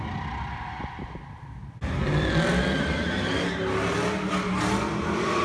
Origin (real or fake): real